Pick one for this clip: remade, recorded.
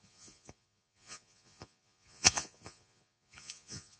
remade